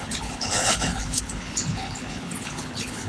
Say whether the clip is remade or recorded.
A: remade